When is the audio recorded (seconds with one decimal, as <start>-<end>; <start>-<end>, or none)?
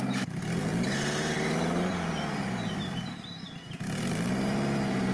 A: 0.0-5.1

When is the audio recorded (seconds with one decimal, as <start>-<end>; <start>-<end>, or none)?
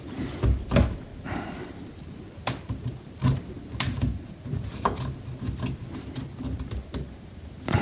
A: 0.0-1.1; 2.2-4.1; 4.7-5.8; 6.7-7.8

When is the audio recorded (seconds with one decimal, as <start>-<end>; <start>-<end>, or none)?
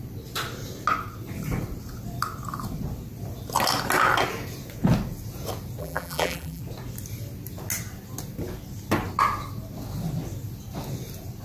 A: 0.0-5.8; 6.6-11.4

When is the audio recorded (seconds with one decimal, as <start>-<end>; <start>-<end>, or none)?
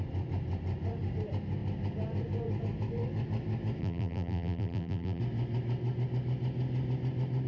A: 0.0-3.8; 5.2-7.5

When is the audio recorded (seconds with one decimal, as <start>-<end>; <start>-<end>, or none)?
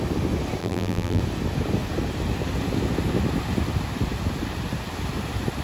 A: 0.0-0.6; 1.2-5.6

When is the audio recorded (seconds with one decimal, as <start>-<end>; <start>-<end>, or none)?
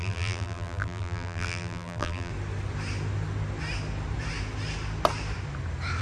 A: 2.3-6.0